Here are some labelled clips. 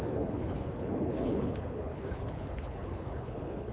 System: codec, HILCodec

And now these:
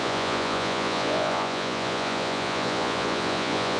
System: vocoder, Vocos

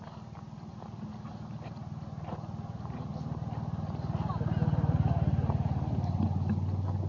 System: none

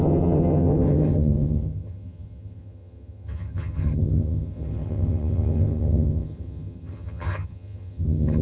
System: vocoder, HiFi-GAN